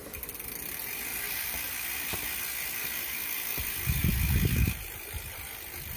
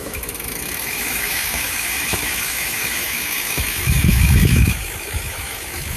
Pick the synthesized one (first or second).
second